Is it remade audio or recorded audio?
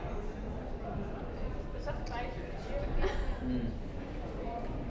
recorded